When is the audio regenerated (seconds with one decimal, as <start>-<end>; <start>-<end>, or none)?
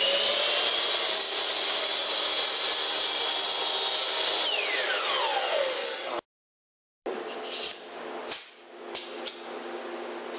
none